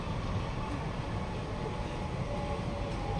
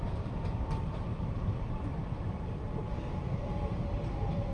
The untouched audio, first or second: first